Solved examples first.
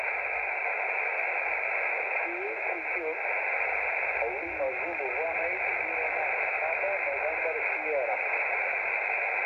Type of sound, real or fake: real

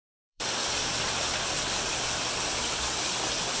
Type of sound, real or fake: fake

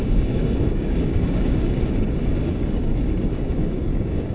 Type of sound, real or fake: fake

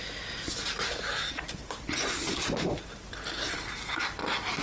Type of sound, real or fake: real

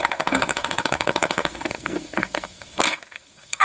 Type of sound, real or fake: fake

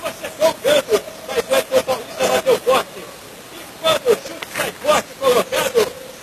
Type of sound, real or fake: real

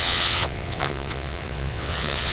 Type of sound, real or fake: fake